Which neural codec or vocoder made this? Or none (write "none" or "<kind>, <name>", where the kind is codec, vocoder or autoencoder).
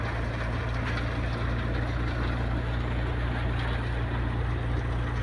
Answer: none